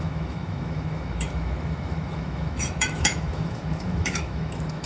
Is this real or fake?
fake